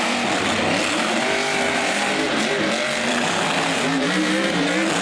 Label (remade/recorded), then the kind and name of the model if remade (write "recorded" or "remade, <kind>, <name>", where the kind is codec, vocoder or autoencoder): remade, vocoder, BigVGAN v2